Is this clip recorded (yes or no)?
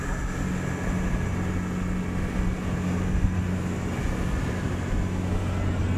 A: yes